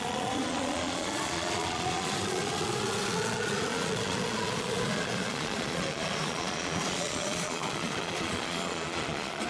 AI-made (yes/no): yes